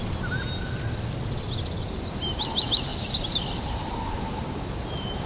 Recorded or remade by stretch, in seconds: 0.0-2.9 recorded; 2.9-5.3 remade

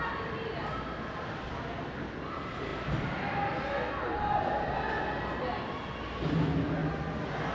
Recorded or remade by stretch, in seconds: 0.0-7.5 recorded

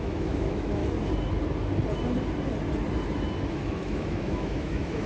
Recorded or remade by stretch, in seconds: 0.0-0.8 remade; 0.8-3.5 recorded; 3.5-5.1 remade

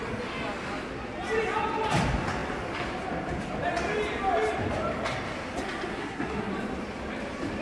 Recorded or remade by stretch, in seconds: 0.0-5.9 recorded; 5.9-6.5 remade; 6.5-7.6 recorded